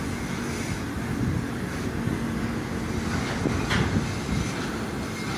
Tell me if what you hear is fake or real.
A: real